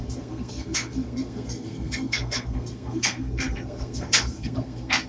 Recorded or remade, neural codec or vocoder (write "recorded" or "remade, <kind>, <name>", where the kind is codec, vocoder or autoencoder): remade, codec, SNAC